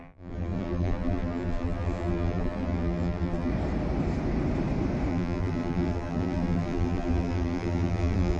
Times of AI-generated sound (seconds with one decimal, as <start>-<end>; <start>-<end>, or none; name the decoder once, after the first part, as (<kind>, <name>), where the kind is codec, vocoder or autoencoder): 0.0-3.5 (vocoder, BigVGAN v2); 5.1-8.4